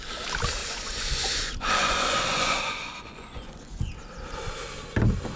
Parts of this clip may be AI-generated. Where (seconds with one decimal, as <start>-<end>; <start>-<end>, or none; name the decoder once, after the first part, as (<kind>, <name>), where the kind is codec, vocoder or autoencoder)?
0.6-3.8 (vocoder, Vocos)